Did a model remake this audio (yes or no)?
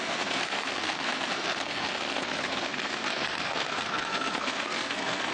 yes